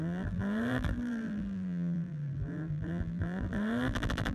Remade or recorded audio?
remade